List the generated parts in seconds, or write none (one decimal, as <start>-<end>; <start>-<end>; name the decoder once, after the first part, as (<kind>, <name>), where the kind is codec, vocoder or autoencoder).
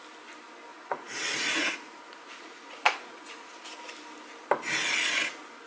0.7-3.7 (vocoder, Vocos)